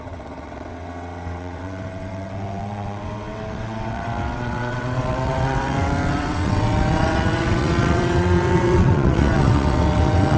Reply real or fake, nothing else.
fake